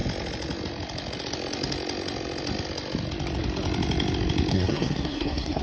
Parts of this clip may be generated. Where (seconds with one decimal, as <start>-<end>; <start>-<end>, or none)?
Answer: 4.5-5.6